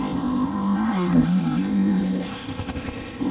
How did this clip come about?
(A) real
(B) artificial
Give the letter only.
B